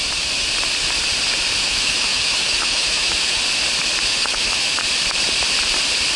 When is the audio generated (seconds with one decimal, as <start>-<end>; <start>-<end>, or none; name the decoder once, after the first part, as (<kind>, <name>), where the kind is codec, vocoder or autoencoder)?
1.6-3.4 (autoencoder, DAC-VAE); 4.1-4.8